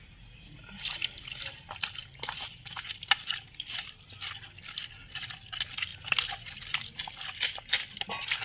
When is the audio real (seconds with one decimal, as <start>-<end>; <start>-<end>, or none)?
0.0-8.4